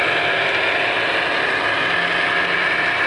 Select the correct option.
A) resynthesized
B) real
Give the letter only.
B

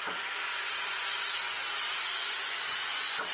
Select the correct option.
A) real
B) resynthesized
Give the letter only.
B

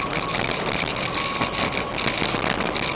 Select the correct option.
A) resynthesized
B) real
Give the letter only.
B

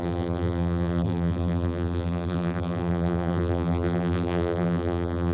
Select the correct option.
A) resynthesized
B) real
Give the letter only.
A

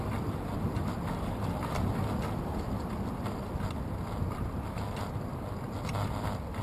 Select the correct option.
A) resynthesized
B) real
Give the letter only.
B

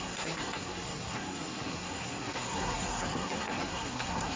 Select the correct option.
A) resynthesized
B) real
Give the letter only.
A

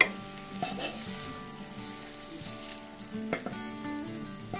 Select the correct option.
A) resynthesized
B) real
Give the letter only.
B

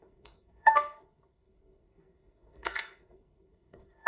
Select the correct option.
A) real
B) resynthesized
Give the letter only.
B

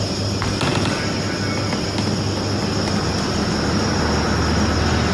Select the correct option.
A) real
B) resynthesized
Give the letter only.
A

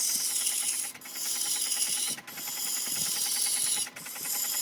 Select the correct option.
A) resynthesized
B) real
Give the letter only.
B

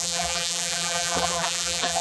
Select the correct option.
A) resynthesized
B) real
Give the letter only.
A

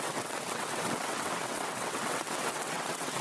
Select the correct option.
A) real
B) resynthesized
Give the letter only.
B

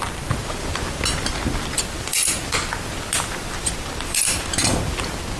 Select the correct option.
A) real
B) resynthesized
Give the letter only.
A